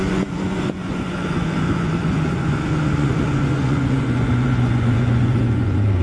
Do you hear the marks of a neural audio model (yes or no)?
yes